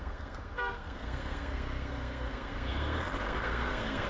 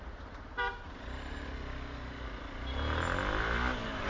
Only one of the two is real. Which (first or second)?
second